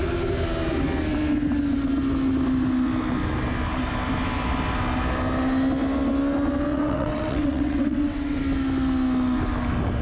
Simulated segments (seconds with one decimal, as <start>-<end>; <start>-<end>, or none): 6.7-8.4